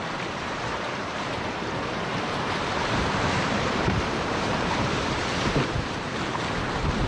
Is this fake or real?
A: fake